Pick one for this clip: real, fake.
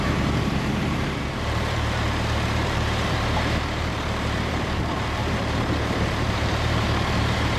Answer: fake